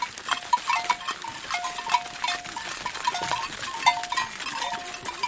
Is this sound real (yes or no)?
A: yes